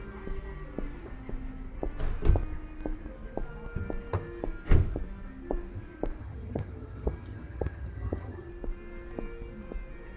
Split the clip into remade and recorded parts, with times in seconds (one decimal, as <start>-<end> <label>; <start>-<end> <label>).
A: 0.0-6.2 recorded; 6.2-8.5 remade; 8.5-10.2 recorded